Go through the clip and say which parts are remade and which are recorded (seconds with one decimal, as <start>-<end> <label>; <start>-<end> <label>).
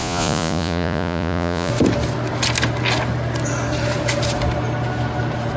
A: 0.0-1.7 remade; 1.7-5.6 recorded